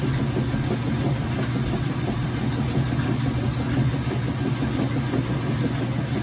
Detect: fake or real real